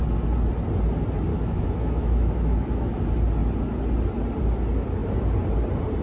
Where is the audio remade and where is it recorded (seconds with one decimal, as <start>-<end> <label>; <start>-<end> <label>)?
0.0-1.3 recorded; 1.3-3.0 remade; 3.0-6.0 recorded